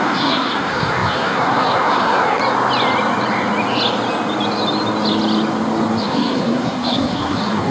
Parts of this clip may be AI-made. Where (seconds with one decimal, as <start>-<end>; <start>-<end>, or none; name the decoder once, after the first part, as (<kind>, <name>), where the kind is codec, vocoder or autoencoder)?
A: 0.0-2.4 (codec, SNAC); 6.0-7.7